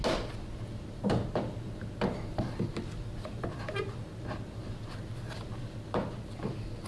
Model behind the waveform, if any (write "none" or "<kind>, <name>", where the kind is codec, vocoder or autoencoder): none